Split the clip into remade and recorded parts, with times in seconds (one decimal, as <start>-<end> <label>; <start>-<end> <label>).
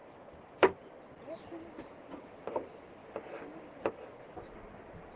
0.0-5.2 recorded